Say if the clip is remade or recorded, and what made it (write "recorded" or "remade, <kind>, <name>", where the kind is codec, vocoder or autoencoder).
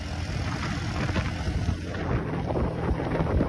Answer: recorded